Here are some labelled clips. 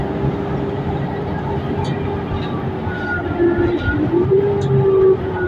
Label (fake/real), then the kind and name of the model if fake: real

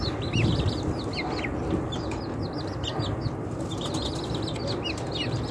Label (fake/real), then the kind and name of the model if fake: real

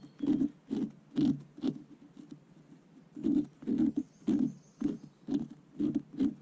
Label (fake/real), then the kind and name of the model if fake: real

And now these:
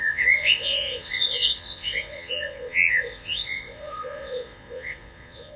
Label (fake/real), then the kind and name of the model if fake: fake, vocoder, Vocos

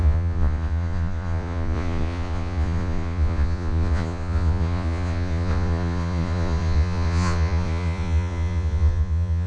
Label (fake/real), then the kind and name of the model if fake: fake, vocoder, Vocos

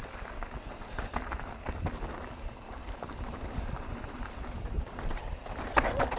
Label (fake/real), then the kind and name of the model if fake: real